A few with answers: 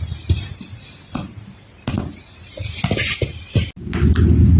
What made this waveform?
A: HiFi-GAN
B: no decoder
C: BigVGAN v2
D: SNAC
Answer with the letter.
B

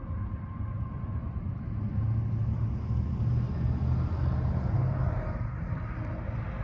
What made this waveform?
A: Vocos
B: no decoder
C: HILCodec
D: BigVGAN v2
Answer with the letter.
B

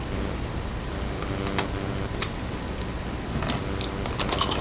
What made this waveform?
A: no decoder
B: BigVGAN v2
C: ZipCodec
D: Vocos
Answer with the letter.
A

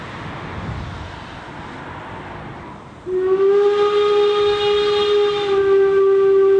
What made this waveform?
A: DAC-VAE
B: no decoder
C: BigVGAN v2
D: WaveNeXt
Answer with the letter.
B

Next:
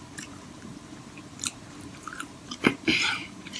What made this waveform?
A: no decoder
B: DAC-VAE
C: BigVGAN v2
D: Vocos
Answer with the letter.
C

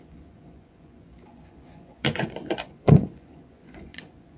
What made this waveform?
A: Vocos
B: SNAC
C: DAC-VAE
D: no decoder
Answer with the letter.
A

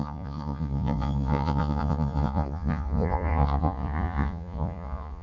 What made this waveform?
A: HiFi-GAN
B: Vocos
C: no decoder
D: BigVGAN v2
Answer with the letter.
B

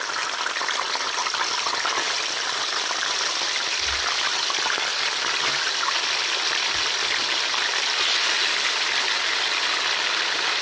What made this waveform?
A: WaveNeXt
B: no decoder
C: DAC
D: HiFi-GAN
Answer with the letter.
B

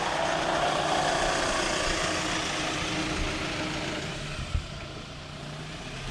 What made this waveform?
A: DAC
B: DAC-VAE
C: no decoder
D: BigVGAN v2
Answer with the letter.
C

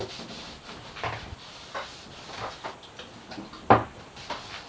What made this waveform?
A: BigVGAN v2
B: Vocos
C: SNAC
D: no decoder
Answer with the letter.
D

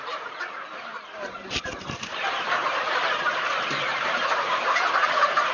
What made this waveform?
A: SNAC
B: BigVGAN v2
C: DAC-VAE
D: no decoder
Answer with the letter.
B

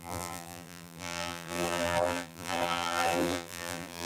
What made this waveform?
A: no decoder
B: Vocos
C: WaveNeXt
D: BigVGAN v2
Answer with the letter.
D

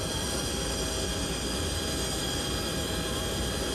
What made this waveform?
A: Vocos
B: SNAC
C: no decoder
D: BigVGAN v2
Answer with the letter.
C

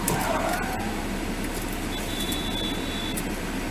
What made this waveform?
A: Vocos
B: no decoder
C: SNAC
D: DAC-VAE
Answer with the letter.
B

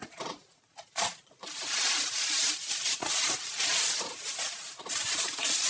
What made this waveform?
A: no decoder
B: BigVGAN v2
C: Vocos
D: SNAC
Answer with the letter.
C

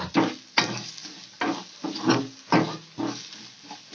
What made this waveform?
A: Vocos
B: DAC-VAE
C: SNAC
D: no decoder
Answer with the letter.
D